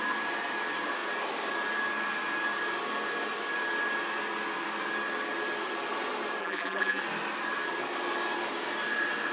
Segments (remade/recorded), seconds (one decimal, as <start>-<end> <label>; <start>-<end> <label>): 0.0-6.4 recorded; 6.4-7.0 remade; 7.0-9.3 recorded